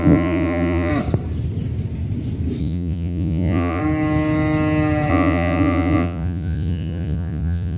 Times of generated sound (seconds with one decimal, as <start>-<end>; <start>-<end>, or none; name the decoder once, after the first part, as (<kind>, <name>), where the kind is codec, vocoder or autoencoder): 0.0-0.9 (vocoder, Vocos); 2.6-3.8; 5.1-7.8